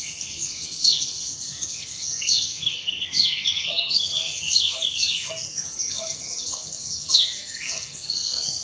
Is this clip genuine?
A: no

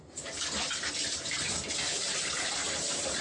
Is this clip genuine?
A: yes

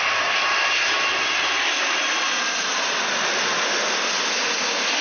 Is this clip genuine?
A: yes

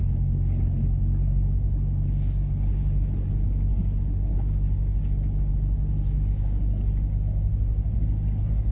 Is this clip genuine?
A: yes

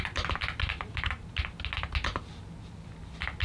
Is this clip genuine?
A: yes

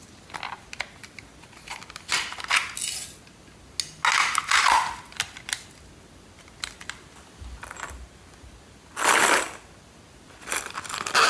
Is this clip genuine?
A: yes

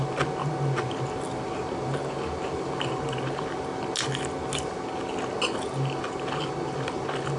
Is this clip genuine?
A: yes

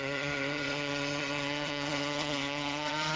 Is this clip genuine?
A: no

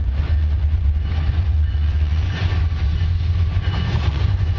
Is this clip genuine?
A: no